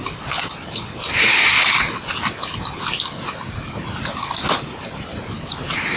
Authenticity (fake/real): real